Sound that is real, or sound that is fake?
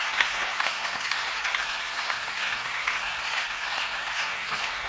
fake